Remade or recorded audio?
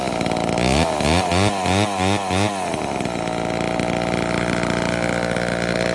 recorded